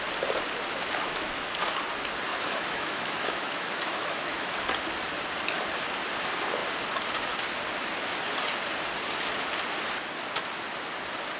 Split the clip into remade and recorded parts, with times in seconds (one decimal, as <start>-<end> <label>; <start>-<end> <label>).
0.0-2.3 recorded; 2.3-4.5 remade; 4.5-11.4 recorded